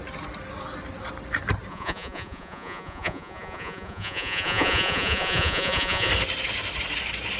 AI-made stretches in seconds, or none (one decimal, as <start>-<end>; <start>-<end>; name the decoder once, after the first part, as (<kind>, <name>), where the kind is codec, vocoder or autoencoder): 1.7-6.1 (vocoder, Vocos)